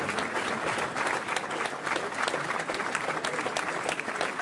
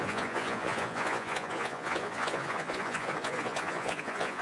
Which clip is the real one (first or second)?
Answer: first